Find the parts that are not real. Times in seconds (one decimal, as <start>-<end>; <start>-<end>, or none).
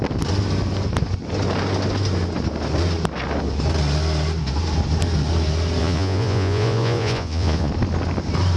5.8-7.7